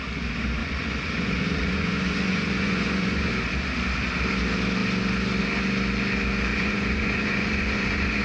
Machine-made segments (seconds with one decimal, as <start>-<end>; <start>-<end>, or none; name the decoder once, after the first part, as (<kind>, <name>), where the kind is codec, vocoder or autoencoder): 0.6-3.3 (vocoder, Vocos); 6.5-8.2